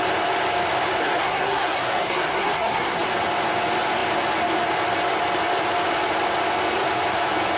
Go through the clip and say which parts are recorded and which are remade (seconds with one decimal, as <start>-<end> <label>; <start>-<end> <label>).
0.0-1.0 recorded; 1.0-3.0 remade; 3.0-7.6 recorded